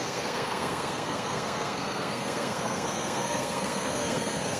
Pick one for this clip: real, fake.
fake